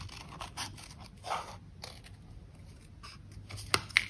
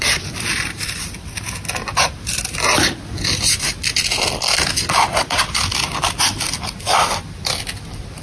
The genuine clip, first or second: first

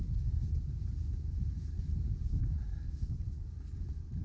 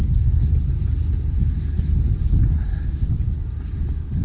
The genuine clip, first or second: second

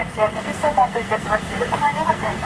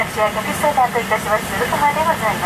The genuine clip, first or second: second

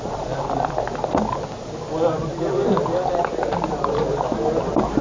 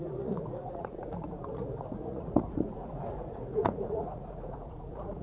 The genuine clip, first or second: first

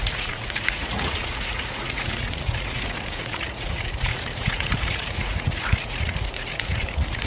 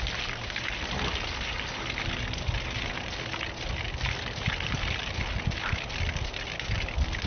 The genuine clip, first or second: second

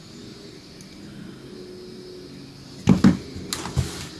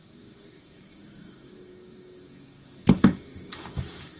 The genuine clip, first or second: first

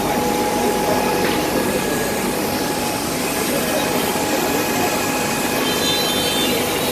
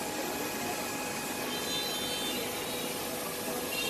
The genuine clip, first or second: second